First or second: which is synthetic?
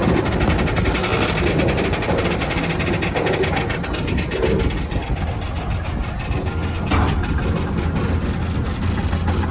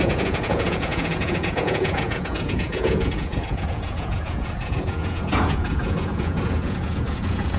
second